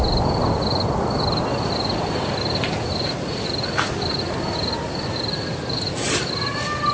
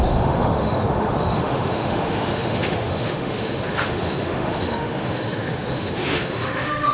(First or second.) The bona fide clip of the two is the first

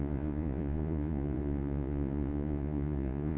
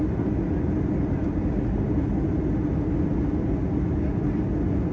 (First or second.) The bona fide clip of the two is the second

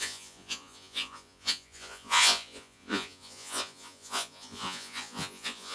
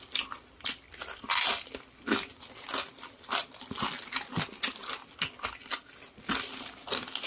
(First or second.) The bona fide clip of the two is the second